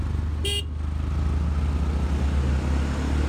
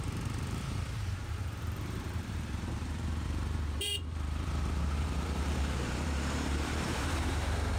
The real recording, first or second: first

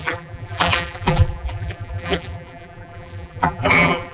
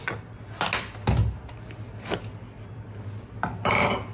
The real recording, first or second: second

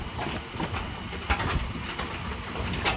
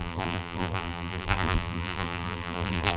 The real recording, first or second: first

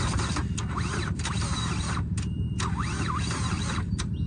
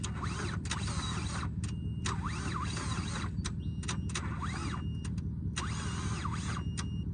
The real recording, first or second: second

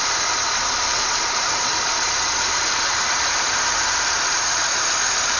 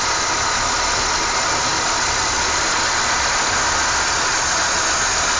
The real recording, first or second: second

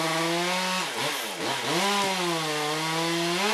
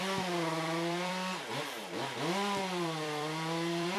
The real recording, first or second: first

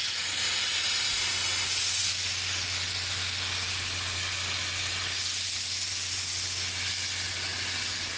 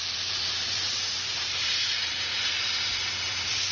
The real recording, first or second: first